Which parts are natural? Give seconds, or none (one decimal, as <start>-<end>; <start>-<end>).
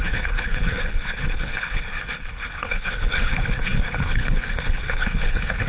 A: none